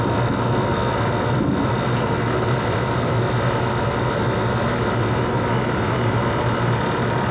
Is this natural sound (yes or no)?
yes